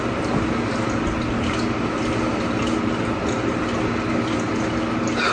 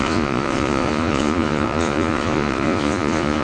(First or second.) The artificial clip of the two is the second